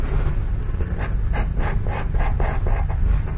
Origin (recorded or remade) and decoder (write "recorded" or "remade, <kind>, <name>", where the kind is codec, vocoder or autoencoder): recorded